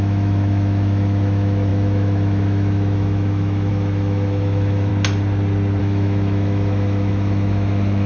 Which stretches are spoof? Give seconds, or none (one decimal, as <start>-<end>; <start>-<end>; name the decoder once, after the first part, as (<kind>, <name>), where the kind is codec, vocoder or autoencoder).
0.0-4.9 (autoencoder, DAC-VAE); 5.8-8.1

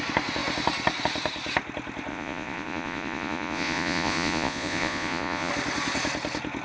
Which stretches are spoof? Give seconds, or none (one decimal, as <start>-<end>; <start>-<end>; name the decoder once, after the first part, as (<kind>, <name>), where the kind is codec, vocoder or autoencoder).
2.1-5.5 (vocoder, Vocos)

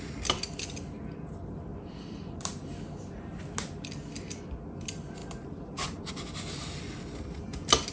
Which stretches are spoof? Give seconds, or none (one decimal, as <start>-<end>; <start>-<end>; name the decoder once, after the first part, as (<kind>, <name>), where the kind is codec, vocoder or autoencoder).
1.7-3.4 (vocoder, BigVGAN v2); 5.2-6.1

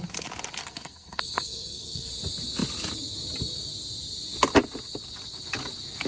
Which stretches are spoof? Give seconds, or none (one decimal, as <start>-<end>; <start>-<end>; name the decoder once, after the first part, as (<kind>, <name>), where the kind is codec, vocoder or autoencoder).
0.6-2.1 (codec, SNAC)

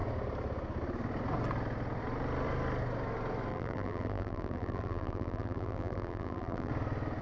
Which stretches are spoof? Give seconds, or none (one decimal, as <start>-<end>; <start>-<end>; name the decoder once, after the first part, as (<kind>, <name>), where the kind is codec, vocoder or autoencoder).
3.5-6.7 (vocoder, BigVGAN v2)

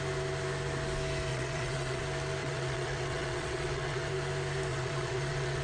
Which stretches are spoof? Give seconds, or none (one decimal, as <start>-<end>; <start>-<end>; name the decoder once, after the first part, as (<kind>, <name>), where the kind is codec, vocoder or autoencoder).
1.3-2.0 (vocoder, WaveNeXt); 2.4-4.1; 4.7-5.6

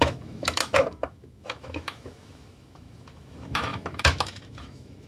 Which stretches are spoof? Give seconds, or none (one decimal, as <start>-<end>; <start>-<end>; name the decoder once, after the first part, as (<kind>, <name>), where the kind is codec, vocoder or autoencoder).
0.0-5.1 (autoencoder, DAC-VAE)